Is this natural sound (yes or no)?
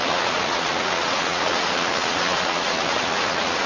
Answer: no